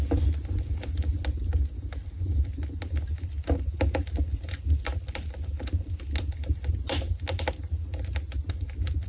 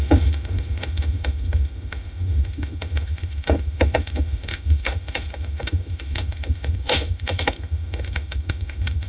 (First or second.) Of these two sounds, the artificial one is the second